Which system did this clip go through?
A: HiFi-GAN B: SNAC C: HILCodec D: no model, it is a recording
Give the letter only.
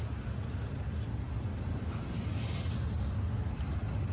D